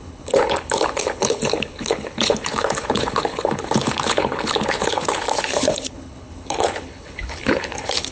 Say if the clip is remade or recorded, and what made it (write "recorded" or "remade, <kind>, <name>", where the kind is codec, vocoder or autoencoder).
remade, codec, HILCodec